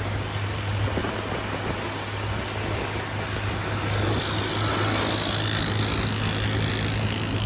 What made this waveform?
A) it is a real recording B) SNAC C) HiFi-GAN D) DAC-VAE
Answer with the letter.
A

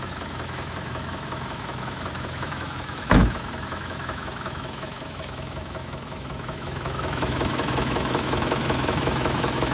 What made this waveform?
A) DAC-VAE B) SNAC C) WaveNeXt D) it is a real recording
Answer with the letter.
A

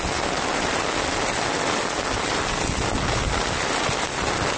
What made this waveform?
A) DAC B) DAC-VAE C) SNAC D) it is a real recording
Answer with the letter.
D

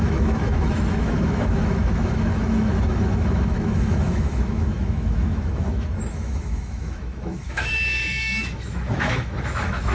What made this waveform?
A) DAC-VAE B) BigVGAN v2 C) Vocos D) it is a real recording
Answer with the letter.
A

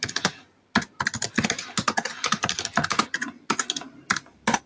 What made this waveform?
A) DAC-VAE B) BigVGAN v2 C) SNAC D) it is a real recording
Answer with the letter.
D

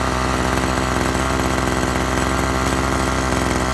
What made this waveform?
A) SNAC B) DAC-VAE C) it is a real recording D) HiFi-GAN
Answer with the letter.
C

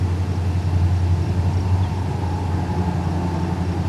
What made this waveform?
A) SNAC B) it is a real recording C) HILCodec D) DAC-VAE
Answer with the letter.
B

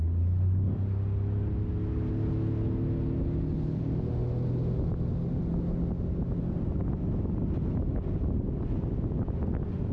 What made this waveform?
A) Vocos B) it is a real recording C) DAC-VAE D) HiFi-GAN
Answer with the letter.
B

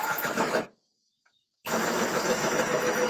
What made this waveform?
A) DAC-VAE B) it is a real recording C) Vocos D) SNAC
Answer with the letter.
A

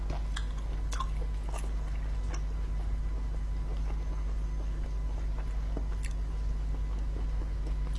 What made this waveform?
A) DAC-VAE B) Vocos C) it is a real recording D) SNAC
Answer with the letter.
C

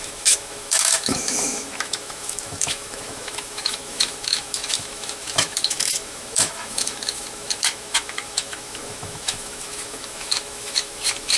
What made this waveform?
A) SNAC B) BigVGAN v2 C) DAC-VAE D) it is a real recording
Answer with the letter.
C